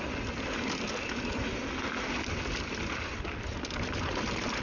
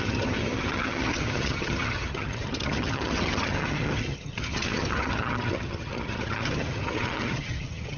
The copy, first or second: second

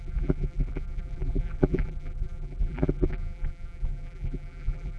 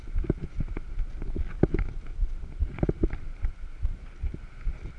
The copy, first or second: first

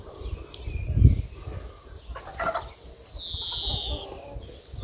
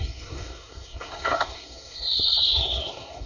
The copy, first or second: second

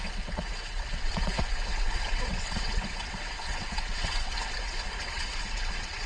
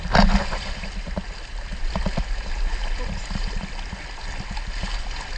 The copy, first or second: first